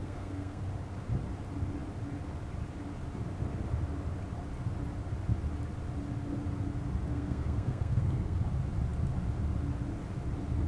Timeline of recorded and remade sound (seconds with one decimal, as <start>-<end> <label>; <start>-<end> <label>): 0.0-0.6 remade; 0.6-7.1 recorded; 7.1-8.4 remade; 8.4-10.7 recorded